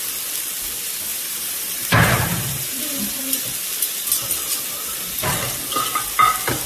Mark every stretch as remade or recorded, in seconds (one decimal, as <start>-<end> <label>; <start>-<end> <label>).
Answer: 0.0-1.1 recorded; 1.1-3.2 remade; 3.2-6.7 recorded